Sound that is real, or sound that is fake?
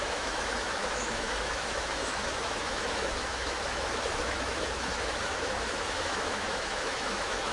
fake